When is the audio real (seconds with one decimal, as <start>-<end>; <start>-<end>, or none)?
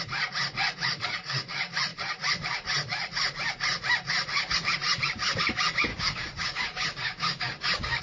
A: 0.0-5.9